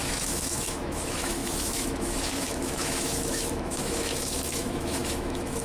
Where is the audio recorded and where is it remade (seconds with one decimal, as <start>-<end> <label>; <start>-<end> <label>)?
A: 0.0-5.6 remade